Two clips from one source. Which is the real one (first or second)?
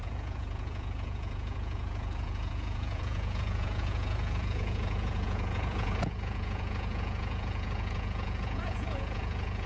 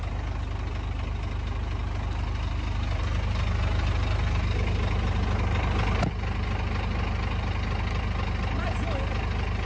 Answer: second